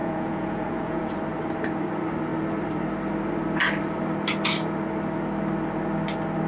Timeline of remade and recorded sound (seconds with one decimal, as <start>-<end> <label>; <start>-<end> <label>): 0.0-1.1 remade; 1.1-6.5 recorded